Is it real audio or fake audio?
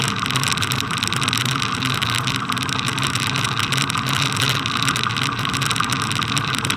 real